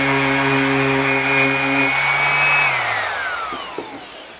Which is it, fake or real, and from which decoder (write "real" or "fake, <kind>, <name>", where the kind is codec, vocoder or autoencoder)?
real